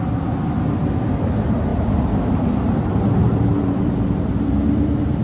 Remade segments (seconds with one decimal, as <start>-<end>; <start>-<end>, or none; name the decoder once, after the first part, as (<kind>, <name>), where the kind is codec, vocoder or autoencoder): 3.2-4.3 (vocoder, BigVGAN v2)